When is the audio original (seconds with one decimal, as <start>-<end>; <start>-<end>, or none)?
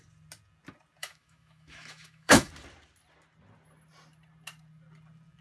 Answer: 0.0-1.0; 2.5-5.4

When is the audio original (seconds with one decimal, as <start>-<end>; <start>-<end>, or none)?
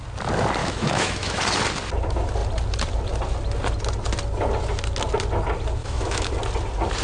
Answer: 0.0-0.6; 1.4-5.8; 6.3-7.0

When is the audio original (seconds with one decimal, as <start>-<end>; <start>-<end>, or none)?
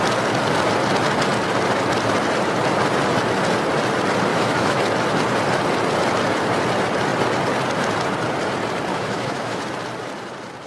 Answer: 0.0-4.3; 4.8-8.9; 9.6-10.7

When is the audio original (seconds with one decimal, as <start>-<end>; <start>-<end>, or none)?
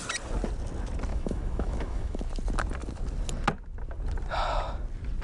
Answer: 0.0-1.1; 2.2-5.2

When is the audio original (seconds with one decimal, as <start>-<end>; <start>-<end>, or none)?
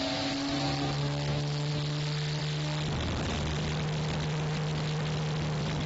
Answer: 0.0-1.0; 1.7-5.9